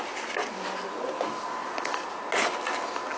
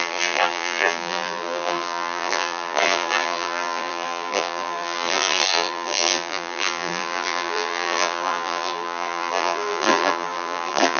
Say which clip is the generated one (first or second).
second